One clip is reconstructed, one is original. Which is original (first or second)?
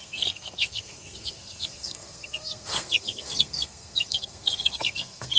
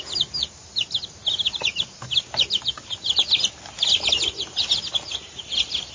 second